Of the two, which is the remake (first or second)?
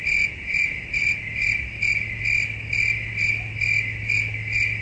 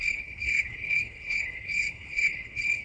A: second